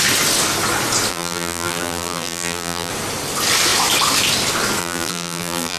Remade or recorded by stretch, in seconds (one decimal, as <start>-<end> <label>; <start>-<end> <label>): 0.0-1.1 recorded; 1.1-2.9 remade; 2.9-4.8 recorded; 4.8-5.8 remade